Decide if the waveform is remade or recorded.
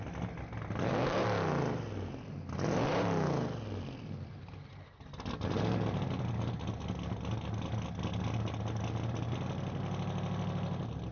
recorded